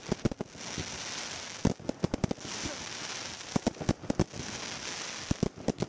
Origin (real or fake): real